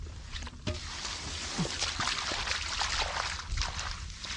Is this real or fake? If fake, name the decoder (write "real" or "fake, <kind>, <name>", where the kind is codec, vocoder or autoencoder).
real